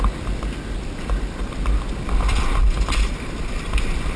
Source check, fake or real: real